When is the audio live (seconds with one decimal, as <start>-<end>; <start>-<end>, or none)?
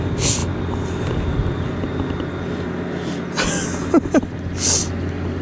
0.0-5.4